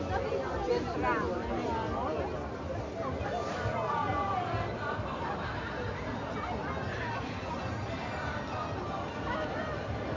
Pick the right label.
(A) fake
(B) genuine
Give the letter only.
B